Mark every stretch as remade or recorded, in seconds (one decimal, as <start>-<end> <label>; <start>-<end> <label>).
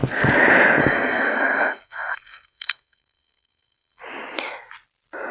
0.0-0.8 recorded; 0.8-4.0 remade; 4.0-5.3 recorded